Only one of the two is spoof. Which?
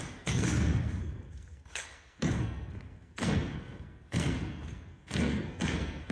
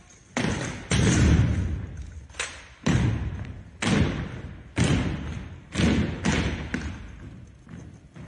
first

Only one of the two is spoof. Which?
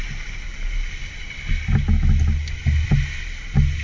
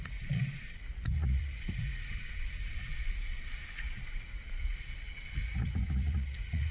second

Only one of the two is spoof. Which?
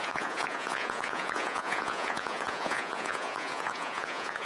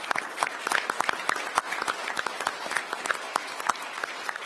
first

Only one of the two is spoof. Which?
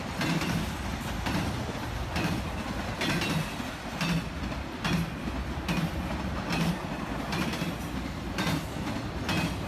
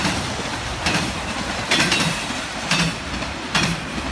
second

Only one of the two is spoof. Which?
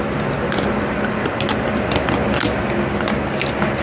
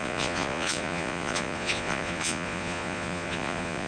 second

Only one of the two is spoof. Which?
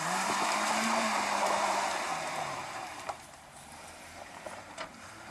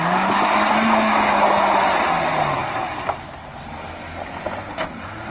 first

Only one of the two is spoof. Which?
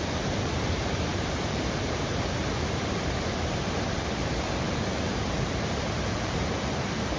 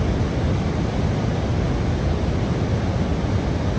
first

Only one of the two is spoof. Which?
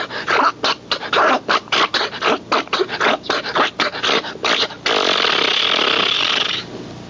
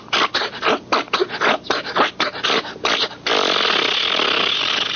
first